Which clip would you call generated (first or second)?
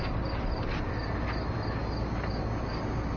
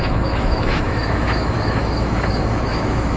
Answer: second